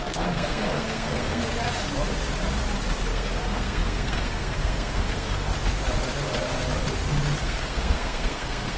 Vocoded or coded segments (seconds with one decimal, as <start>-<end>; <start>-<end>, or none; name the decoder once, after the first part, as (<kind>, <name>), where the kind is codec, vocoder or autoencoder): 0.0-1.4 (codec, SNAC); 3.1-5.5; 7.4-8.8